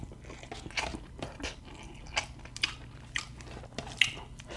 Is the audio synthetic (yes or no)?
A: no